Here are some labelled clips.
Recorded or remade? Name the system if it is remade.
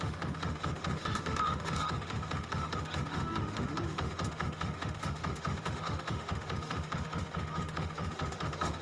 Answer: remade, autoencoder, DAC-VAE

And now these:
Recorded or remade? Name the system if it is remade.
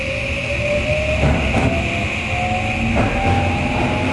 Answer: recorded